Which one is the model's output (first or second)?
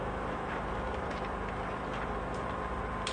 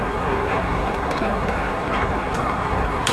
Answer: second